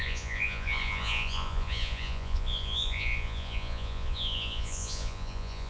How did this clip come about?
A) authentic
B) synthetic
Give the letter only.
B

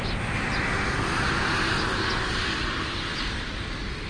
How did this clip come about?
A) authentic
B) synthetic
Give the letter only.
A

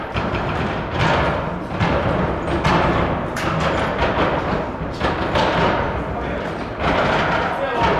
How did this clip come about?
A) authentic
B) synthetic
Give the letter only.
A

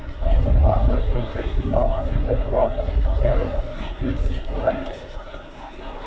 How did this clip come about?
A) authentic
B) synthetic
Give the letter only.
B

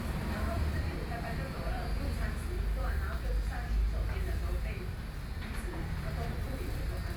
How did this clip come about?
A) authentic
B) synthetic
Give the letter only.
B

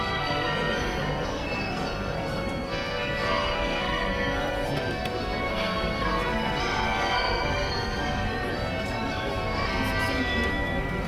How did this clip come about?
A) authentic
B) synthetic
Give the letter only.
B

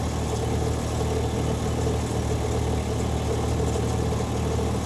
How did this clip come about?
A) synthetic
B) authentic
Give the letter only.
B